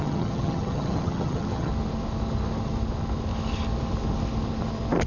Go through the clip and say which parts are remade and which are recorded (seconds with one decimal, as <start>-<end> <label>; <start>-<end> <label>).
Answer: 0.0-1.7 remade; 1.7-5.1 recorded